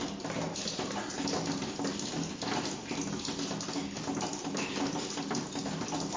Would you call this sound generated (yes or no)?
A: no